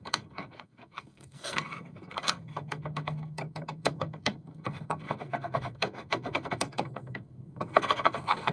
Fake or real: fake